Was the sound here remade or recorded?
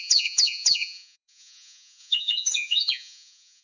remade